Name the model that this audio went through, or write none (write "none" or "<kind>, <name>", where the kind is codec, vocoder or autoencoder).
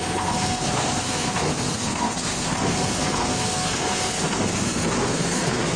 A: codec, SNAC